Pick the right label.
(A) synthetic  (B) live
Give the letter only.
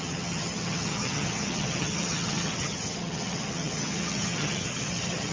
A